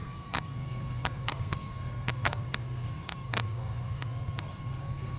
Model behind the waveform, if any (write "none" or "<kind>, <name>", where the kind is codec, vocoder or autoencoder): codec, SNAC